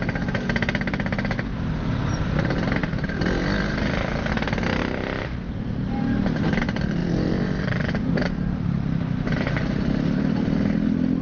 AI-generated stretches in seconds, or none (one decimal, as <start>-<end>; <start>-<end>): 7.0-11.2